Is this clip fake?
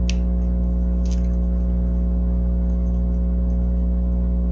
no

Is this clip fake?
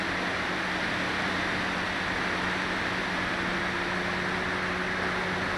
no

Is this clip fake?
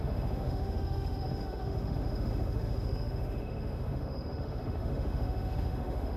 yes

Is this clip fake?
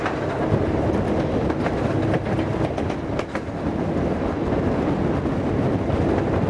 no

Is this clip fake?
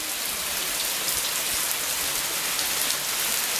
no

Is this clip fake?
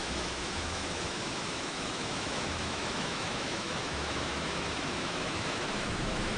yes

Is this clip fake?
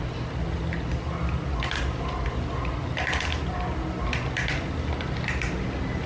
no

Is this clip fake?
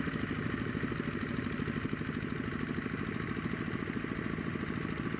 no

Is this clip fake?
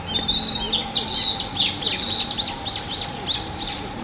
no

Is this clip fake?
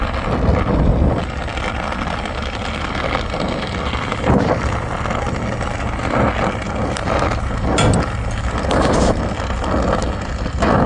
no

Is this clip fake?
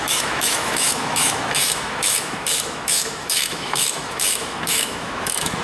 yes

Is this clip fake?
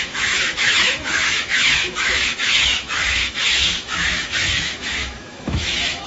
yes